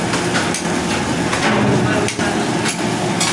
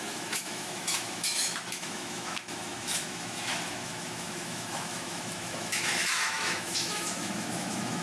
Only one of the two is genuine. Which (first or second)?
first